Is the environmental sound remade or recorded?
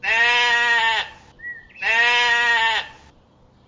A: recorded